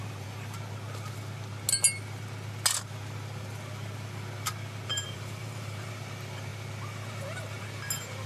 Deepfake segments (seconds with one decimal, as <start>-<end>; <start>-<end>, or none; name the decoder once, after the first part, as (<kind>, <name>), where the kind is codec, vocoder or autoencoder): 4.9-5.9 (vocoder, BigVGAN v2)